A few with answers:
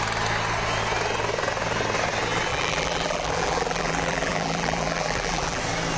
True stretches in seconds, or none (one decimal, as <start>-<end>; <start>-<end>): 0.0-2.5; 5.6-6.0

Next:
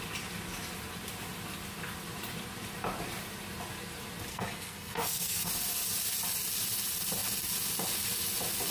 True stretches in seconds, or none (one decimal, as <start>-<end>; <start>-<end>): 0.0-4.3; 5.5-8.7

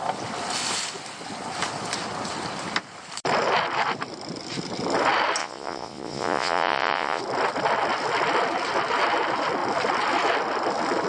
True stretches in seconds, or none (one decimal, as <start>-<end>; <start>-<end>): 0.0-5.4; 7.2-11.1